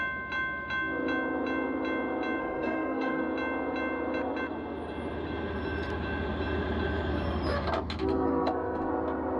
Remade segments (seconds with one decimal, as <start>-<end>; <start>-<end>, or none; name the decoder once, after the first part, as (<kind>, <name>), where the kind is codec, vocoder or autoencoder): 2.4-3.2 (codec, SNAC); 8.1-8.9